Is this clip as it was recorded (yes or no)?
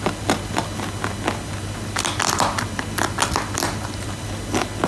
yes